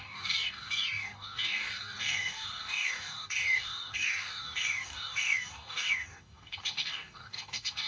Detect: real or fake fake